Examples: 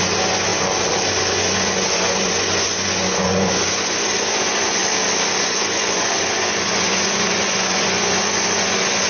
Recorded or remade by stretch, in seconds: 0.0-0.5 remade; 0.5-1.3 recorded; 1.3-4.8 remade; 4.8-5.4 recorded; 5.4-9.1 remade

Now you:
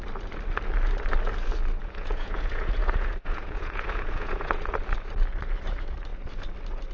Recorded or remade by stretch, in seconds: 0.0-1.8 recorded; 1.8-4.8 remade; 4.8-6.9 recorded

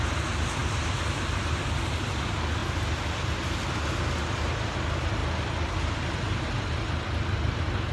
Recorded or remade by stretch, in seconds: 0.0-7.9 recorded

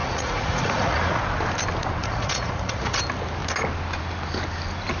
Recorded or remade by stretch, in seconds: 0.0-1.2 remade; 1.2-2.0 recorded; 2.0-3.0 remade; 3.0-5.0 recorded

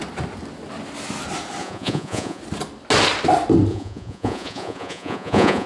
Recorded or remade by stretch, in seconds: 0.0-1.6 recorded; 1.6-2.4 remade; 2.4-3.7 recorded; 3.7-5.7 remade